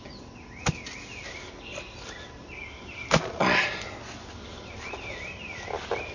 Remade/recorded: recorded